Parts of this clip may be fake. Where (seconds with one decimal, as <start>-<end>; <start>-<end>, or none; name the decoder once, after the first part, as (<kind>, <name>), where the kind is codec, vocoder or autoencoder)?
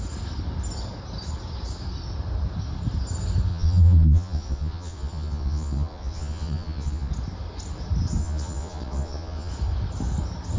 3.5-7.1 (vocoder, Vocos); 8.2-9.5